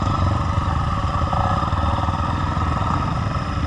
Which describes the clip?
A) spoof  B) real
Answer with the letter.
A